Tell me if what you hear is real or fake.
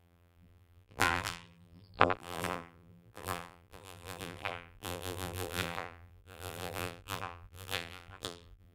fake